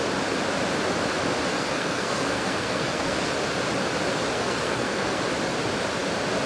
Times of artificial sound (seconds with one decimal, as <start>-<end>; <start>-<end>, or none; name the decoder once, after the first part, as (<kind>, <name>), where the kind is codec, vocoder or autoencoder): 1.5-3.3 (codec, SNAC); 4.1-5.2